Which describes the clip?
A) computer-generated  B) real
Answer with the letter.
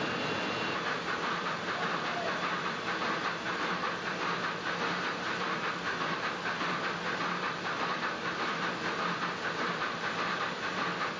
A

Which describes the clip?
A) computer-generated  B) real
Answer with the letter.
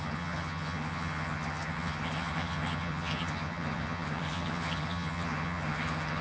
A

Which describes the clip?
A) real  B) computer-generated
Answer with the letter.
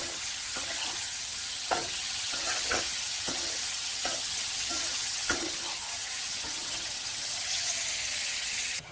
B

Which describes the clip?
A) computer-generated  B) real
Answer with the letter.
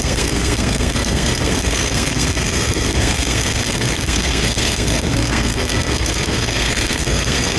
A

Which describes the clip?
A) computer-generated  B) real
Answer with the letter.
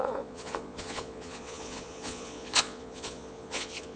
A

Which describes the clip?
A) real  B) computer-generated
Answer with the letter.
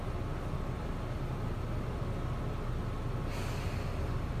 A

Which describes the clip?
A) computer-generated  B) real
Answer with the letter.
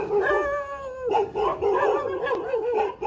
B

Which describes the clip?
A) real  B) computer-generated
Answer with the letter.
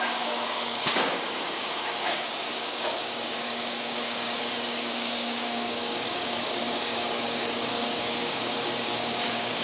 B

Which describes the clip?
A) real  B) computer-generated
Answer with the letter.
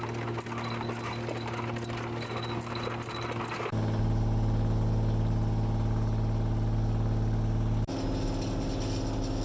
A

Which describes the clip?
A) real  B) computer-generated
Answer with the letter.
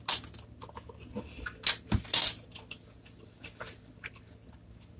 A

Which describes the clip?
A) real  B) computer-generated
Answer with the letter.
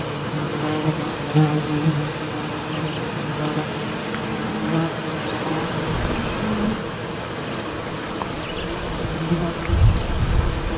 A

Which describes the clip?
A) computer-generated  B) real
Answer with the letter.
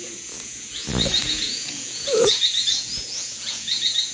A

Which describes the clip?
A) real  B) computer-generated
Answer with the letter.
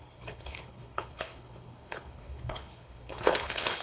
B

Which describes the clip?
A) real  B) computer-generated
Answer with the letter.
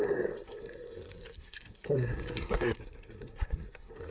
B